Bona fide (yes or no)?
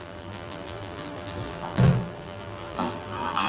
no